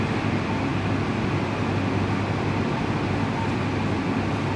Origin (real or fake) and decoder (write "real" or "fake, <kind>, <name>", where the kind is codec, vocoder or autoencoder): real